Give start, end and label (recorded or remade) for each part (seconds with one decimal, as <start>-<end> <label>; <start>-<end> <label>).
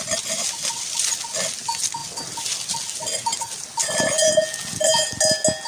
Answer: 0.0-5.7 recorded